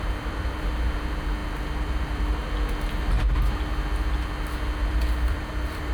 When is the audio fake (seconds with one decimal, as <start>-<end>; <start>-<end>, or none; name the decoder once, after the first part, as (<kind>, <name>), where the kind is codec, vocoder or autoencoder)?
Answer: 0.0-2.4 (vocoder, BigVGAN v2); 4.9-5.9